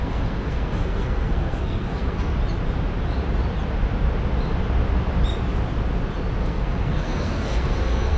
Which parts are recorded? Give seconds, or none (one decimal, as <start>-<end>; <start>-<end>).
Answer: 2.3-6.4